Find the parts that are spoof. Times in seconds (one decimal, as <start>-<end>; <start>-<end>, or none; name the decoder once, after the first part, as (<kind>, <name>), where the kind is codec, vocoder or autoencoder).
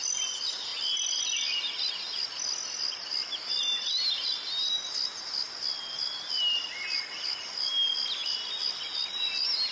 none